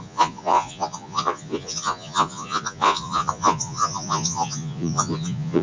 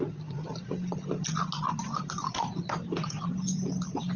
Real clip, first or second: second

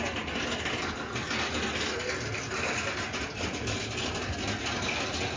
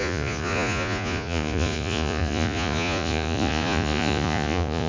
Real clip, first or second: first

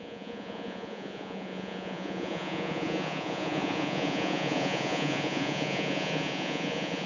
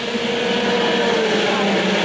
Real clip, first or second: second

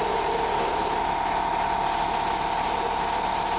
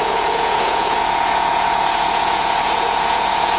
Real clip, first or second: first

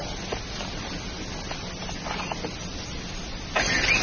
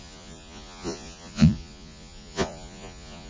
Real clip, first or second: first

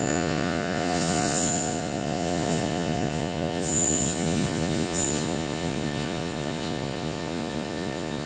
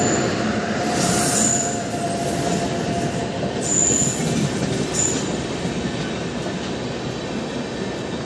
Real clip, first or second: second